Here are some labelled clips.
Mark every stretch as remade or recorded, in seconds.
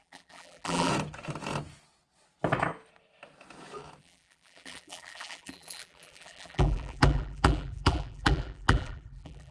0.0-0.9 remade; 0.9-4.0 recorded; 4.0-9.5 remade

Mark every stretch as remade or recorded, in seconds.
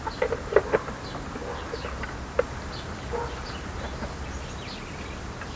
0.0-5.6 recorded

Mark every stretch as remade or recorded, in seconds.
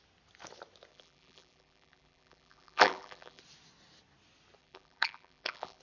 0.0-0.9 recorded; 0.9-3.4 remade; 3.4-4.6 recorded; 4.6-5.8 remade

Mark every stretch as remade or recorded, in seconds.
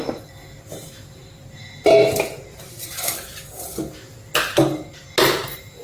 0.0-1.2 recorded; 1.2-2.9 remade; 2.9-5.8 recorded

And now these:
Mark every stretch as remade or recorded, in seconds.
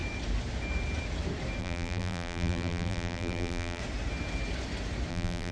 0.0-1.6 recorded; 1.6-3.8 remade; 3.8-5.1 recorded; 5.1-5.5 remade